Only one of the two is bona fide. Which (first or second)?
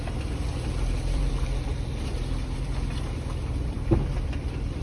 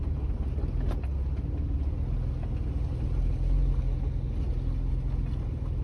second